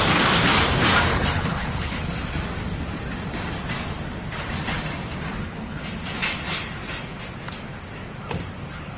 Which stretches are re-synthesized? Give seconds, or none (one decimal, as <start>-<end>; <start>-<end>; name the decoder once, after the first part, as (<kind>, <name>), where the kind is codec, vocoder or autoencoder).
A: 1.1-2.1 (codec, HILCodec); 5.3-5.8